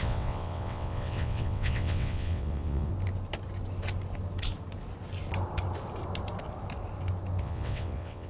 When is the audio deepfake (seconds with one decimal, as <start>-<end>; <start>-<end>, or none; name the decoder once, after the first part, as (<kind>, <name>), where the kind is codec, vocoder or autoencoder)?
0.0-2.9 (vocoder, WaveNeXt); 7.4-8.3